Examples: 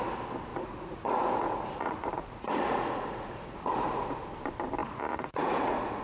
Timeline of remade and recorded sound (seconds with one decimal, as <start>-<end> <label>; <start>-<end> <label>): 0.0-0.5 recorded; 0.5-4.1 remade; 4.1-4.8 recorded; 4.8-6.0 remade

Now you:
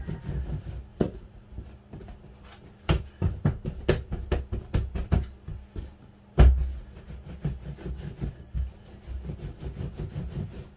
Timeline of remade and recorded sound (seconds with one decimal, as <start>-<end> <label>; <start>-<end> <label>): 0.0-0.9 recorded; 0.9-1.5 remade; 1.5-10.8 recorded

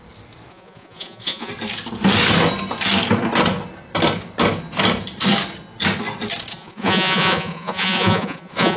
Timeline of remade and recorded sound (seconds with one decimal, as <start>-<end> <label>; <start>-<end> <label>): 0.0-0.5 recorded; 0.5-1.5 remade; 1.5-6.5 recorded; 6.5-8.8 remade

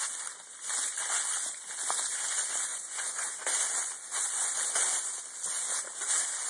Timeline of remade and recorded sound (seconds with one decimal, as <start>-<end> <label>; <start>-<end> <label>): 0.0-2.7 recorded; 2.7-3.3 remade; 3.3-4.4 recorded; 4.4-4.9 remade; 4.9-6.5 recorded